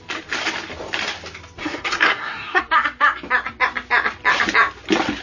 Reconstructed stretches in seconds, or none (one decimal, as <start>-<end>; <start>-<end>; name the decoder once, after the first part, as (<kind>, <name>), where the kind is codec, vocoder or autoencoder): 1.6-2.6 (codec, SNAC)